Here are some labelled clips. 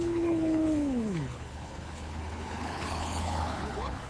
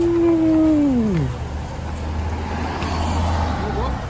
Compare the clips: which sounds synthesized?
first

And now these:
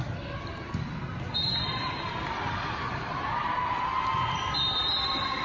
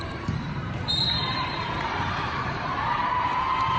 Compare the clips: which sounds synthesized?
second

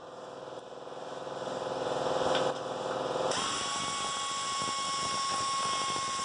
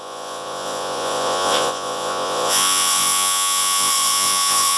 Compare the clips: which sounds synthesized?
second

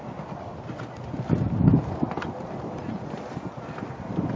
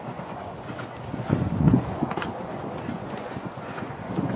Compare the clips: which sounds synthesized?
second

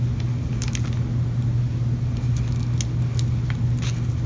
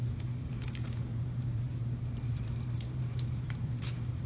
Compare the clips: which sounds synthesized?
second